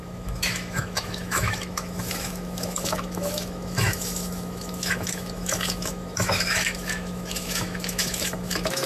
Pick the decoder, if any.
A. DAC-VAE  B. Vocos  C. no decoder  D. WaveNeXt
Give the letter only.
A